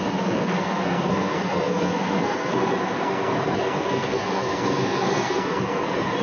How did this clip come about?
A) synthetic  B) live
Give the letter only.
A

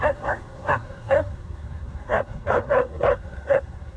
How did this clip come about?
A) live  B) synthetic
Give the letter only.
B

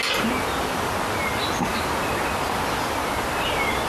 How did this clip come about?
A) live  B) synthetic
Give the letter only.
A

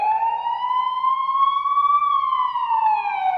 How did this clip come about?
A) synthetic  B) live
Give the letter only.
B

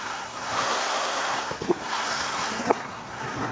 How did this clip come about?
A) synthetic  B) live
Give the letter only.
A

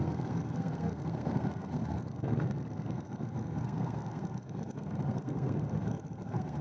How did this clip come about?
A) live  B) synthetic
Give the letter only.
B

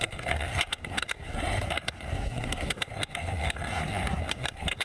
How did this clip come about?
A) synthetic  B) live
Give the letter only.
A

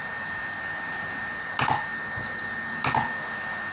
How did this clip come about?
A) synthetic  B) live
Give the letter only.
B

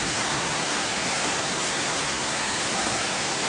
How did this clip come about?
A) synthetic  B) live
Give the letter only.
A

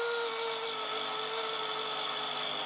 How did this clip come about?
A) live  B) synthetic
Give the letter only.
A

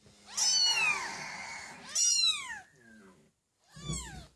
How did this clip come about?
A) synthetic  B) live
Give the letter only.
B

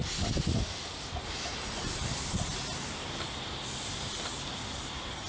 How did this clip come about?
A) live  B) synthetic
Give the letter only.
A